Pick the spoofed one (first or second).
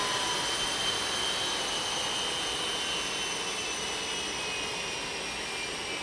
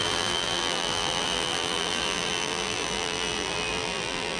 second